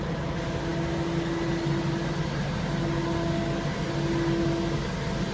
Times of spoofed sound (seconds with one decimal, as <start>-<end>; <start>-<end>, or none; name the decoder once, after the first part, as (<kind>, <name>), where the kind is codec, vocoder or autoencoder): none